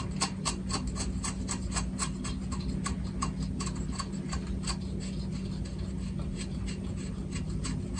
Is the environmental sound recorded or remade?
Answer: recorded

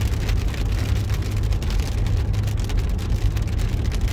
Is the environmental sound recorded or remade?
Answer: recorded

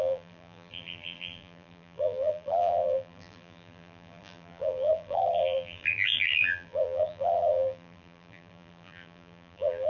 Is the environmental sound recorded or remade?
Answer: remade